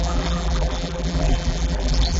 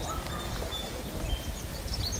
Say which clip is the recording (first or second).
second